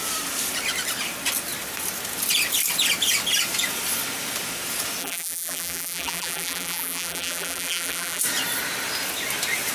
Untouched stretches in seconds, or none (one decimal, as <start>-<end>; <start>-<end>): 0.0-5.0; 8.2-9.7